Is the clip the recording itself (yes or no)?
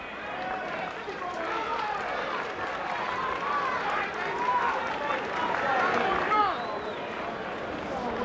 yes